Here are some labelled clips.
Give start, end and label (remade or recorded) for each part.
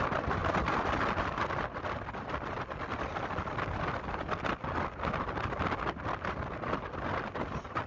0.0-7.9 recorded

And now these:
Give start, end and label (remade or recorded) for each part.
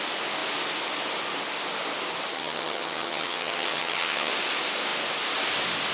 0.0-2.3 recorded; 2.3-4.3 remade; 4.3-5.9 recorded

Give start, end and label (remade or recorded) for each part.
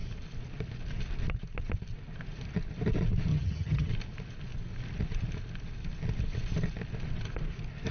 0.0-3.3 recorded; 3.3-3.9 remade; 3.9-7.9 recorded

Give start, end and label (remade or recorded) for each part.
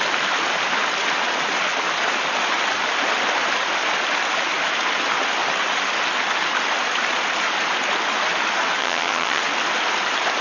0.0-8.8 recorded; 8.8-9.4 remade; 9.4-10.4 recorded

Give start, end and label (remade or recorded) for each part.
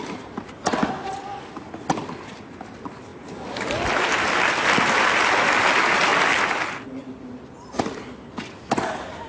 0.0-9.3 recorded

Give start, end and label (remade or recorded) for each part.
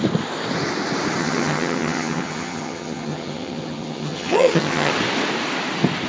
0.0-1.2 recorded; 1.2-4.9 remade; 4.9-6.1 recorded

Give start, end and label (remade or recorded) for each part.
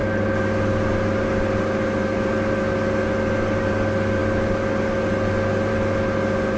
0.0-6.6 recorded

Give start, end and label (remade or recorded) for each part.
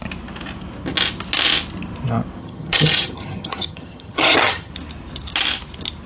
0.0-2.4 recorded; 2.4-4.7 remade; 4.7-6.1 recorded